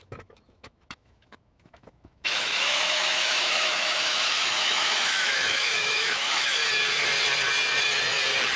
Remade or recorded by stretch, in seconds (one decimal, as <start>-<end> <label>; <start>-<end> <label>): 0.0-6.6 remade; 6.6-8.6 recorded